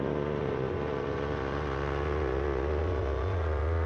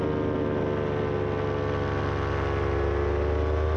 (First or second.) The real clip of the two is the second